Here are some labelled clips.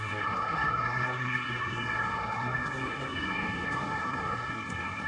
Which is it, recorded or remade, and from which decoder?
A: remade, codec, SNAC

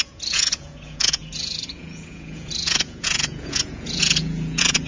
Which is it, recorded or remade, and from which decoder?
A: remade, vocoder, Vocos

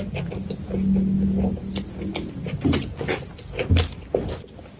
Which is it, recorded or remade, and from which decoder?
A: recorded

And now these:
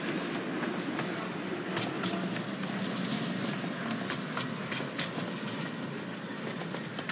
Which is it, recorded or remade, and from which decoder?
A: recorded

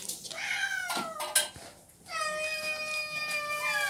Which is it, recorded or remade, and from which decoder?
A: recorded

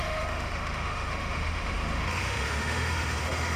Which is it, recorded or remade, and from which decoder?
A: remade, autoencoder, DAC-VAE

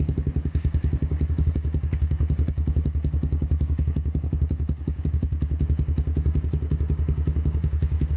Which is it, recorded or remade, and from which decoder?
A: remade, codec, DAC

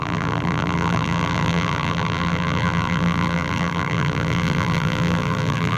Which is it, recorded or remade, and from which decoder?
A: remade, vocoder, BigVGAN v2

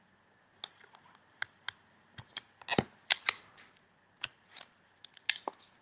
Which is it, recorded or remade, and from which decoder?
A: recorded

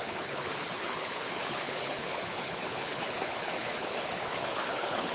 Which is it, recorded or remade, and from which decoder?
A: remade, codec, HILCodec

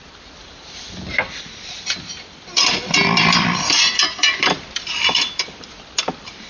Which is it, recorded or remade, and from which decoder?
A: remade, vocoder, BigVGAN v2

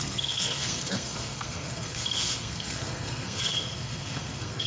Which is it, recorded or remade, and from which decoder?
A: remade, codec, SNAC